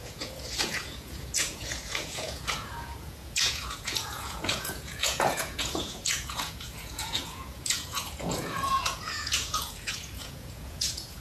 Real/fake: fake